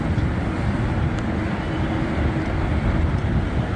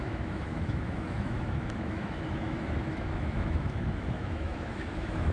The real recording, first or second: first